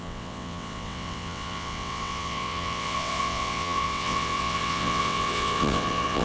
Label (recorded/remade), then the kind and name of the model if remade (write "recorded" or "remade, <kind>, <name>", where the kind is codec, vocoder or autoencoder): remade, vocoder, WaveNeXt